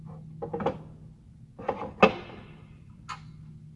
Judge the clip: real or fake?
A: real